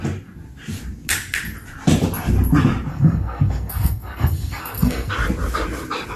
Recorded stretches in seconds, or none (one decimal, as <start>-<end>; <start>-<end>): 0.0-2.9; 5.1-6.2